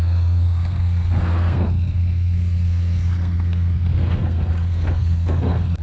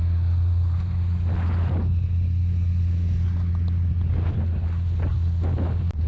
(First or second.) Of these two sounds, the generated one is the first